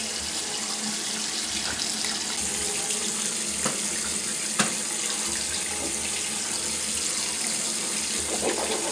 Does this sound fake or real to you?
real